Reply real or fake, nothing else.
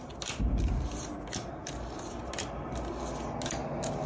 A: real